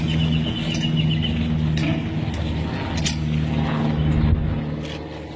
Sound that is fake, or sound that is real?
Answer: real